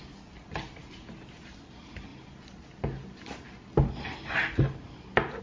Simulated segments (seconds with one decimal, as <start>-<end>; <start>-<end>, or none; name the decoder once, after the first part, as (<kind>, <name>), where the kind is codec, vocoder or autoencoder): none